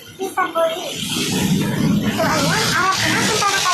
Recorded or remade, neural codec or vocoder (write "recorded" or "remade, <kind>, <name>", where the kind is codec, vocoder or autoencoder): recorded